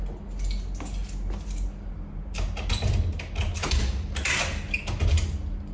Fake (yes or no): no